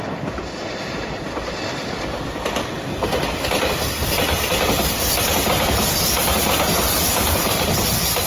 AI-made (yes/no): no